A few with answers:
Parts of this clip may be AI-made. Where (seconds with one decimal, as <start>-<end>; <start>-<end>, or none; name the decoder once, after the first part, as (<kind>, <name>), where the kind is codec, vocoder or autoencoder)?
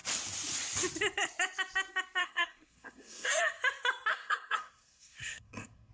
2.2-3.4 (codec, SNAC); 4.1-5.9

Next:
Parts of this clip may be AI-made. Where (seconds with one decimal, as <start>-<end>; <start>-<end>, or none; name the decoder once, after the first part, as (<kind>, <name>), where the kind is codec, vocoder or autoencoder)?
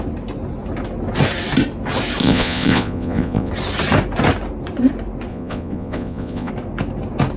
2.2-3.5 (vocoder, Vocos); 5.3-6.5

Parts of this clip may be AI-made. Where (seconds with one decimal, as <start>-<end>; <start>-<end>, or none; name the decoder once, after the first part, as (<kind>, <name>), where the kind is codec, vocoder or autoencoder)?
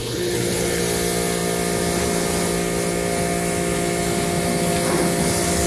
0.0-0.8 (codec, HILCodec)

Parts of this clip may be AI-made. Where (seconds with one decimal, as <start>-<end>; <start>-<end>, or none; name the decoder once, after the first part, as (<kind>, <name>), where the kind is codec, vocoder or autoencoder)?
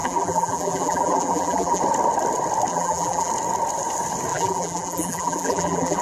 0.0-1.8 (vocoder, BigVGAN v2); 2.7-3.3; 4.3-6.0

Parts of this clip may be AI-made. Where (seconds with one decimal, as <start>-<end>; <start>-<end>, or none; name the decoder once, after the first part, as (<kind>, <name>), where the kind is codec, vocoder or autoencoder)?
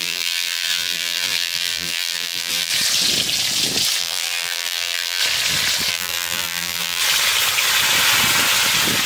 0.0-2.7 (vocoder, BigVGAN v2); 4.0-5.2; 5.9-7.0